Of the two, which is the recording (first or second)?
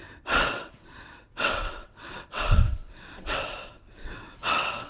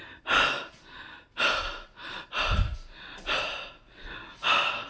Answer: second